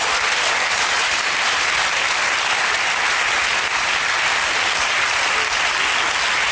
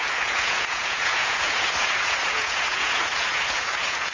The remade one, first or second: second